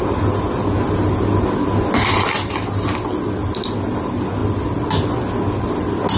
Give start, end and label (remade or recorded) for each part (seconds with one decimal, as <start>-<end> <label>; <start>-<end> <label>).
0.0-6.2 recorded